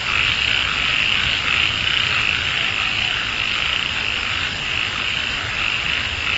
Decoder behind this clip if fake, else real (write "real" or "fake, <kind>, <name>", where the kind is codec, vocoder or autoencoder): real